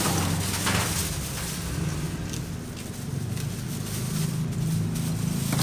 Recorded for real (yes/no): yes